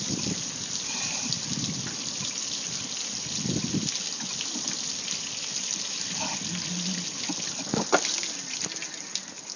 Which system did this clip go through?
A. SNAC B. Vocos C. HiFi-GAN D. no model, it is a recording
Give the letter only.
D